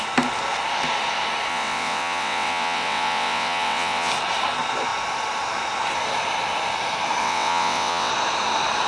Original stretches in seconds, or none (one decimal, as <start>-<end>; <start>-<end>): 0.0-1.5; 4.1-7.2; 8.1-8.9